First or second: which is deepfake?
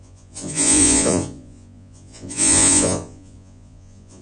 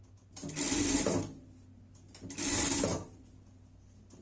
first